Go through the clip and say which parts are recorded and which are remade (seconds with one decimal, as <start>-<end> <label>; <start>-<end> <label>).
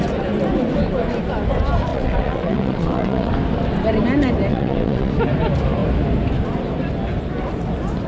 0.0-1.9 recorded; 1.9-3.3 remade; 3.3-4.5 recorded; 4.5-5.1 remade; 5.1-8.1 recorded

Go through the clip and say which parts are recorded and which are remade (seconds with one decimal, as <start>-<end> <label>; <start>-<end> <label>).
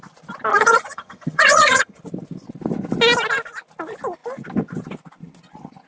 0.0-0.5 recorded; 0.5-2.0 remade; 2.0-5.9 recorded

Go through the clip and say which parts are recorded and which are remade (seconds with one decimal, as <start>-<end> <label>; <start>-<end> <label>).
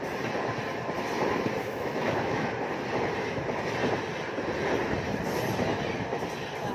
0.0-1.6 recorded; 1.6-2.5 remade; 2.5-6.7 recorded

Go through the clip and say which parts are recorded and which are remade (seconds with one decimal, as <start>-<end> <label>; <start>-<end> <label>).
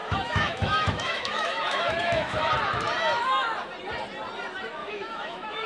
0.0-2.5 remade; 2.5-4.8 recorded; 4.8-5.7 remade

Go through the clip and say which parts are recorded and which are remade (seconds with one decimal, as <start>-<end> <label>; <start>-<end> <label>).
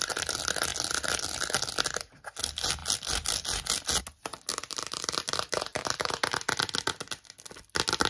0.0-4.5 recorded; 4.5-6.1 remade; 6.1-8.1 recorded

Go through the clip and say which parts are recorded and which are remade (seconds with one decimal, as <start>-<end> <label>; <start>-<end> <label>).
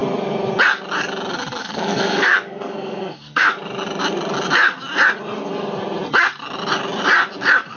0.0-1.6 recorded; 1.6-3.5 remade; 3.5-7.8 recorded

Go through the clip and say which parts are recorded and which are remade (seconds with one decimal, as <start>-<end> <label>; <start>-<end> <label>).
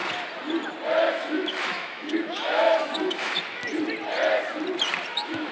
0.0-1.1 recorded; 1.1-3.6 remade; 3.6-5.1 recorded; 5.1-5.5 remade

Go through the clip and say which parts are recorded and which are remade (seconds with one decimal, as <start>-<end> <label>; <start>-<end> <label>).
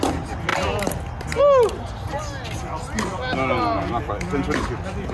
0.0-5.1 recorded